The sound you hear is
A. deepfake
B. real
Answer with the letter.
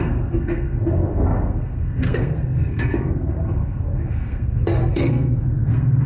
A